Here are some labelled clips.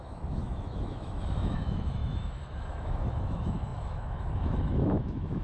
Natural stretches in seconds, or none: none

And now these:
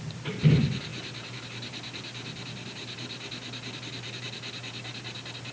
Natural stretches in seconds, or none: 0.0-5.5

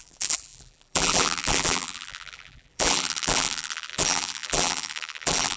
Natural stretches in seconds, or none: none

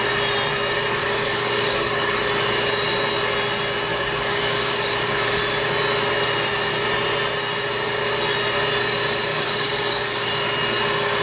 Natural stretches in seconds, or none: 0.0-1.0; 2.2-3.9; 5.4-9.3; 10.3-11.2

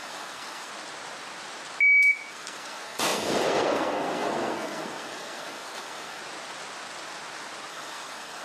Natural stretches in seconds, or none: 0.7-2.3; 6.2-7.7

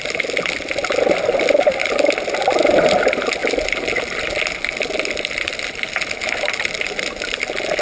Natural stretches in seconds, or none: 0.0-7.8

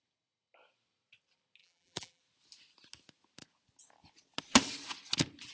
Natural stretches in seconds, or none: 0.0-1.6; 2.2-5.5

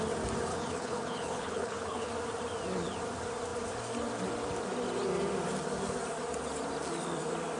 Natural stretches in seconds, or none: 0.0-0.5; 2.1-7.6